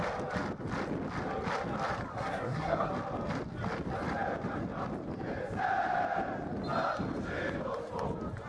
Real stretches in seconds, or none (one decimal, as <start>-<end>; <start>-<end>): 0.0-2.1; 2.9-8.5